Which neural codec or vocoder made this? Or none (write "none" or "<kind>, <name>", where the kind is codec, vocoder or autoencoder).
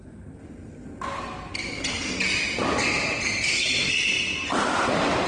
none